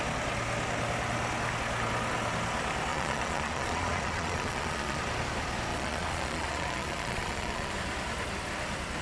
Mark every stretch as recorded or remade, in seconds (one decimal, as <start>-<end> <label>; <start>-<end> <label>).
0.0-2.9 recorded; 2.9-5.0 remade; 5.0-5.7 recorded; 5.7-7.7 remade; 7.7-9.0 recorded

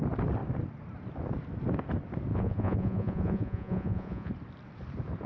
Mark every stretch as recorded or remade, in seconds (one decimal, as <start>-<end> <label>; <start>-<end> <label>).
0.0-2.3 recorded; 2.3-4.3 remade; 4.3-5.3 recorded

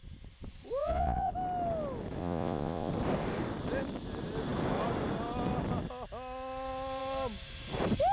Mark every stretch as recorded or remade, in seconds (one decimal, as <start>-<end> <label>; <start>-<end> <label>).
0.0-0.8 recorded; 0.8-1.3 remade; 1.3-2.2 recorded; 2.2-2.9 remade; 2.9-8.1 recorded

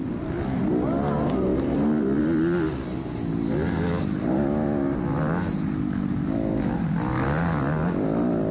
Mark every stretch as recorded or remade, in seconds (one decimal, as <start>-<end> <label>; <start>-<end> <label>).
0.0-8.5 recorded

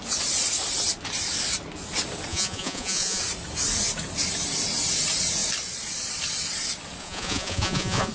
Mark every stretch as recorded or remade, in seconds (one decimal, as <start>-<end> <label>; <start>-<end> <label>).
0.0-2.3 recorded; 2.3-3.2 remade; 3.2-7.0 recorded; 7.0-8.1 remade

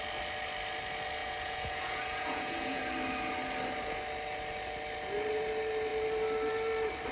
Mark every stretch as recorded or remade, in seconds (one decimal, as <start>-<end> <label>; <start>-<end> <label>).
0.0-1.2 recorded; 1.2-2.8 remade; 2.8-7.1 recorded

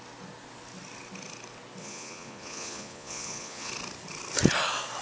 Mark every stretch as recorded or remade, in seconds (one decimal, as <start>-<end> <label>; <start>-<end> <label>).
0.0-1.8 recorded; 1.8-3.7 remade; 3.7-5.0 recorded